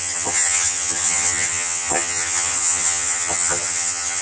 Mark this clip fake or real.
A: fake